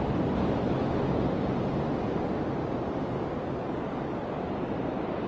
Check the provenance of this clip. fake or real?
real